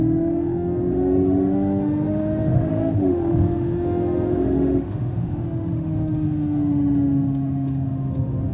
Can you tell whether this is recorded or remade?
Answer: remade